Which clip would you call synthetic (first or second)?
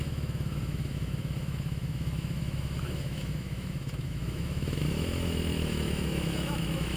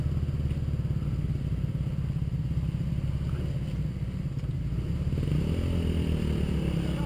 first